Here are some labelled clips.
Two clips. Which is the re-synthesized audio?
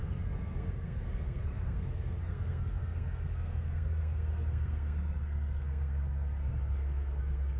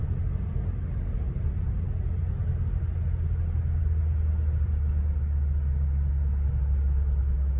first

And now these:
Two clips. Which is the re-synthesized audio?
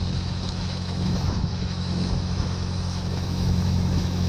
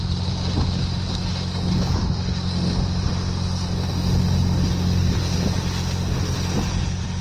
first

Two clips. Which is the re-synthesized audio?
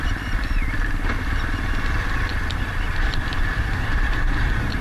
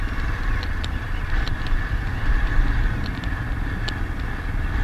first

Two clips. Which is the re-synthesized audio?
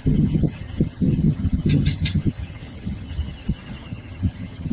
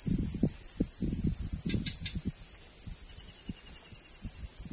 first